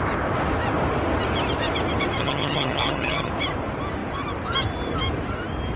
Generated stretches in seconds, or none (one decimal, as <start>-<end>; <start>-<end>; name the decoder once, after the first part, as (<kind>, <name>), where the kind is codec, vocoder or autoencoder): 2.2-3.3 (vocoder, HiFi-GAN)